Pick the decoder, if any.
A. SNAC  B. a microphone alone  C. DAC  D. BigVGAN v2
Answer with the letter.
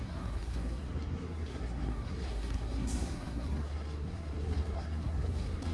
A